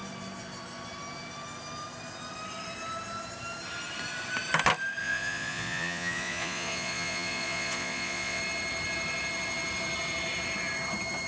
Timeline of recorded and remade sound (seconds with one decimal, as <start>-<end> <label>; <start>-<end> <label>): 0.0-5.0 recorded; 5.0-8.4 remade; 8.4-11.3 recorded